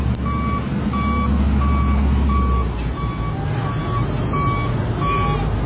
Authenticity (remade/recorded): recorded